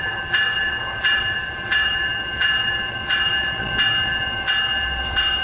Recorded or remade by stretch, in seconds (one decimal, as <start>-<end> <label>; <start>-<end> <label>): 0.0-5.4 remade